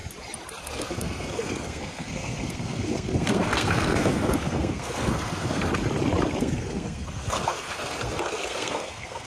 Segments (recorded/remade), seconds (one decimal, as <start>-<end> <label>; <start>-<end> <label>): 0.0-0.6 recorded; 0.6-5.7 remade; 5.7-6.4 recorded; 6.4-9.3 remade